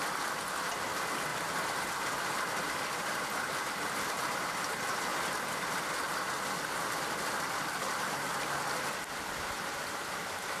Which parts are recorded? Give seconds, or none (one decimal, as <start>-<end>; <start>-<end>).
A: 0.0-1.3; 1.8-10.6